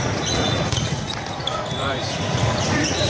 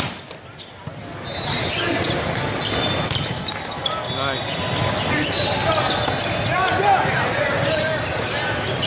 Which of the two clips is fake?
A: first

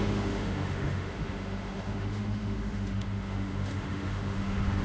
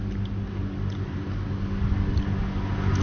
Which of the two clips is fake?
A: first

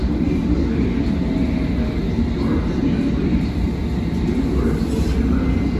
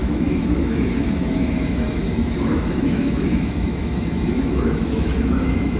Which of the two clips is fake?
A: second